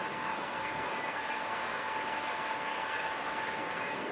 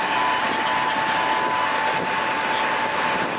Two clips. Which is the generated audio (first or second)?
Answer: first